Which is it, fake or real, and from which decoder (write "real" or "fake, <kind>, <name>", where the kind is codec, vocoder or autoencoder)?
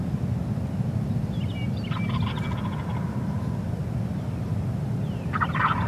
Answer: real